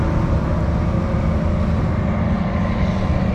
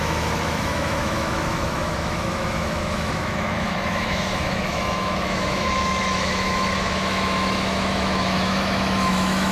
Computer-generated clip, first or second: second